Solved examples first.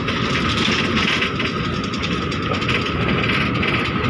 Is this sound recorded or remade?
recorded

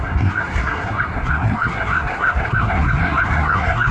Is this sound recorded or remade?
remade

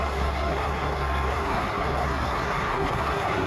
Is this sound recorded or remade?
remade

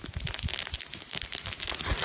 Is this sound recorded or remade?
recorded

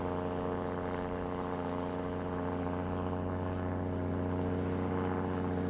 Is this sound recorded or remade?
recorded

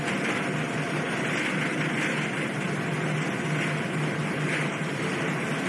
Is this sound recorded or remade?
recorded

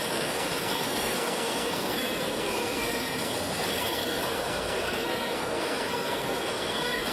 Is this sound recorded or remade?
remade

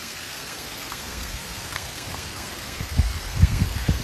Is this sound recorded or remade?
remade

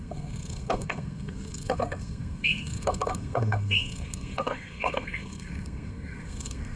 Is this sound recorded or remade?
remade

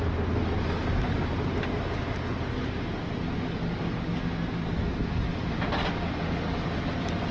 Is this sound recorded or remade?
recorded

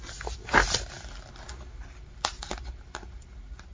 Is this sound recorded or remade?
recorded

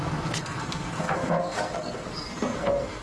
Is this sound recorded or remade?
remade